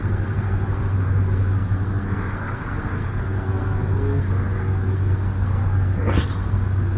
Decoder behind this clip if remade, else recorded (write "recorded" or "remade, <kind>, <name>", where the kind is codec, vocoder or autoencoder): remade, codec, SNAC